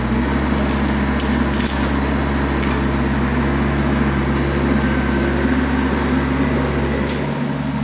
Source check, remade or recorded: recorded